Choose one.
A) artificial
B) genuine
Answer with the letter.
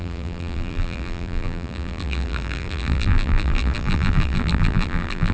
A